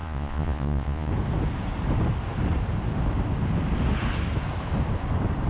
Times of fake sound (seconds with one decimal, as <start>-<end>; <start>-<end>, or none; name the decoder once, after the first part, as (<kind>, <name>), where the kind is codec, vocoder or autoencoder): 0.0-1.1 (vocoder, Vocos)